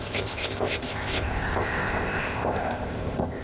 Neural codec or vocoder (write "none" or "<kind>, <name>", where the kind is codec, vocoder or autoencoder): codec, ZipCodec